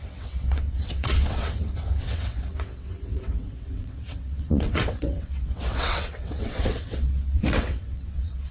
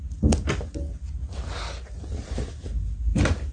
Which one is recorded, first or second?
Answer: second